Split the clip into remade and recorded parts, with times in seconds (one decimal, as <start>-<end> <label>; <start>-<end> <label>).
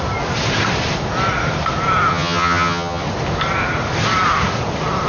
0.0-2.1 recorded; 2.1-3.0 remade; 3.0-5.1 recorded